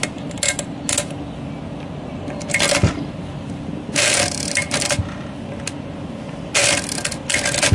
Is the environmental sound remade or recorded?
recorded